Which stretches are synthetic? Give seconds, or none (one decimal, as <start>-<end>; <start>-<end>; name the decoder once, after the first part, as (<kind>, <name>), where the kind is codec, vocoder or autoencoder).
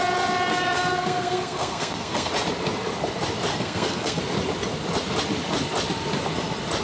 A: 0.5-2.3 (codec, SNAC); 3.5-4.2